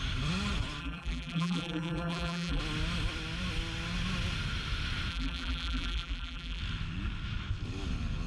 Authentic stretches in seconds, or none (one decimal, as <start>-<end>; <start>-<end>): 0.0-0.8; 2.6-5.1; 6.6-8.3